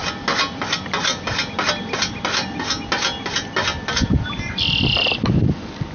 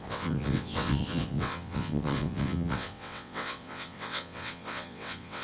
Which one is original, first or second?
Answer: first